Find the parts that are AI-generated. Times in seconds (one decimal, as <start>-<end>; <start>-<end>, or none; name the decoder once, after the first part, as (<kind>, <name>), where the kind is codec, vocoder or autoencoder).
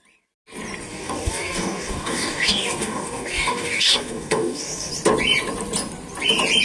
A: 0.9-4.9 (codec, DAC)